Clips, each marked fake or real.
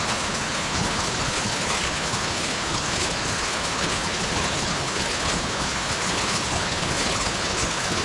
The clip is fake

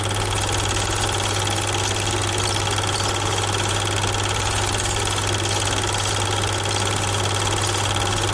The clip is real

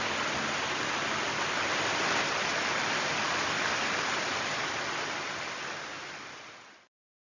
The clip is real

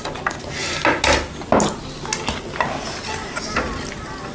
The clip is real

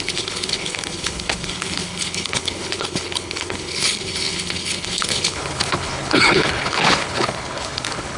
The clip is fake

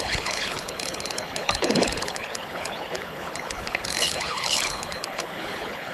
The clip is fake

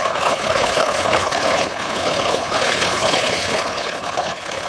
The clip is fake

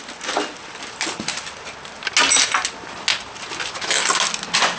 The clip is real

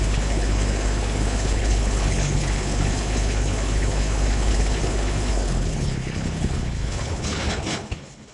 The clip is fake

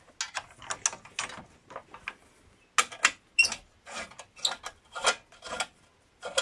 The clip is real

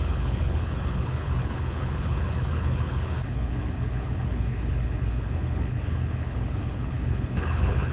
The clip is fake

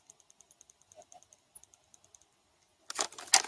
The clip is real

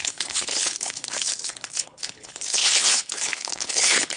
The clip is fake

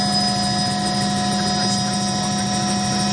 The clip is real